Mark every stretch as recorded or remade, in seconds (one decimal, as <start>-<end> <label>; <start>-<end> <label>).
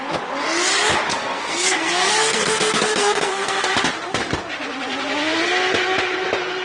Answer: 0.0-1.1 recorded; 1.1-3.7 remade; 3.7-6.6 recorded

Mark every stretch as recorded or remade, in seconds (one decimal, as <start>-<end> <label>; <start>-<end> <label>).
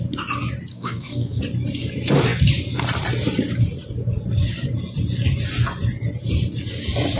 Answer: 0.0-0.7 recorded; 0.7-1.4 remade; 1.4-7.2 recorded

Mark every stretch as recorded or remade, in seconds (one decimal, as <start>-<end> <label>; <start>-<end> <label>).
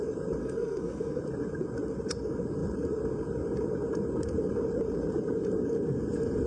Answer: 0.0-0.4 recorded; 0.4-1.2 remade; 1.2-6.5 recorded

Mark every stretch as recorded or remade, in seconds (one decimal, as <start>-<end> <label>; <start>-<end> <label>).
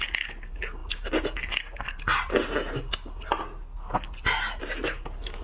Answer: 0.0-5.4 recorded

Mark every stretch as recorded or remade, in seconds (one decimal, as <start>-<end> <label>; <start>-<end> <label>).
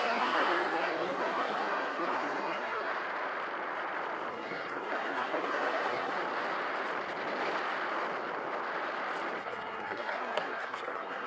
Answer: 0.0-2.9 remade; 2.9-4.3 recorded; 4.3-6.2 remade; 6.2-9.4 recorded; 9.4-11.3 remade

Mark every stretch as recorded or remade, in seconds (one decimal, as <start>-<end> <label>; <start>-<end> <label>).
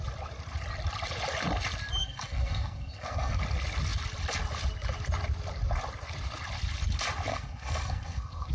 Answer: 0.0-2.0 recorded; 2.0-3.4 remade; 3.4-7.3 recorded; 7.3-8.5 remade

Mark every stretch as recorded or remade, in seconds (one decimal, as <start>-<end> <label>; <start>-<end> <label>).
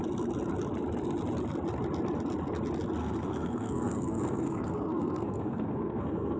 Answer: 0.0-3.0 recorded; 3.0-6.4 remade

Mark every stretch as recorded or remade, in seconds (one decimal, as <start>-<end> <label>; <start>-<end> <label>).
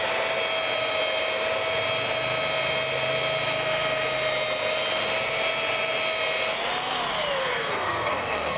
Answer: 0.0-7.4 recorded; 7.4-8.6 remade